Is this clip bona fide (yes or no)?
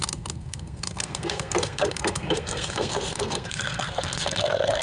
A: no